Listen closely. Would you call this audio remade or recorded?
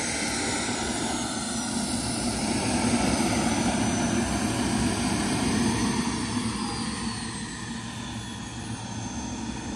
recorded